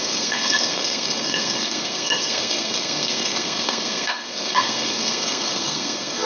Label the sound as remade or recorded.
remade